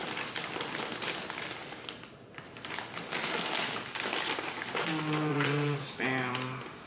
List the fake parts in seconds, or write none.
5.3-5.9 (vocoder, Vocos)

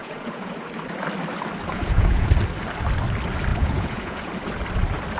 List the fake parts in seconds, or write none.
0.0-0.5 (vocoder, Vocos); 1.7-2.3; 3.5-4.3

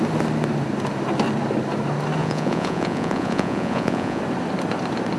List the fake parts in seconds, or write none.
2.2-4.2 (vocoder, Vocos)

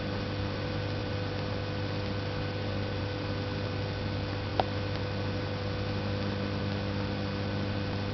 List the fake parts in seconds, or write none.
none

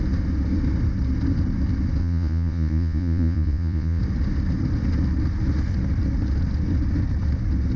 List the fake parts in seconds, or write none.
2.0-4.0 (vocoder, Vocos)